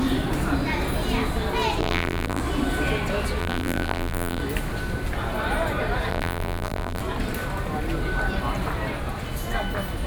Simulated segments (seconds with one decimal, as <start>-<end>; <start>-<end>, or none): 1.8-2.4; 3.4-4.4; 6.1-7.0

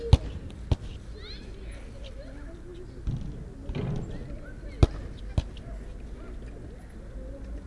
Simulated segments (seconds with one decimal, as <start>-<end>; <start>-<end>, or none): none

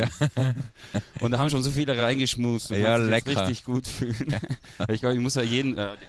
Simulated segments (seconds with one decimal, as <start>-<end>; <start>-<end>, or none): 0.4-1.5